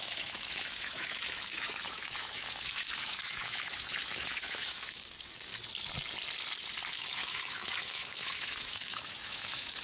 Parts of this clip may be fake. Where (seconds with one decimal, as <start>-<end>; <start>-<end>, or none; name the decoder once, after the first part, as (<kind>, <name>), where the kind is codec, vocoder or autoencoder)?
0.0-5.5 (autoencoder, DAC-VAE); 6.9-9.8